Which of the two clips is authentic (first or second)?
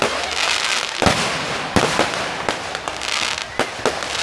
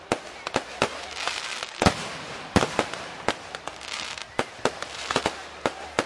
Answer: first